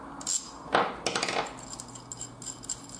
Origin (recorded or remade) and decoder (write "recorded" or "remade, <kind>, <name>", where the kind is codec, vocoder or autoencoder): recorded